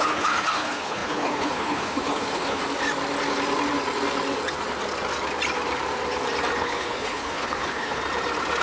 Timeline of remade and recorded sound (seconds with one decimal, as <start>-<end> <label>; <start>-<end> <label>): 0.0-2.6 remade; 2.6-6.6 recorded; 6.6-8.0 remade; 8.0-8.6 recorded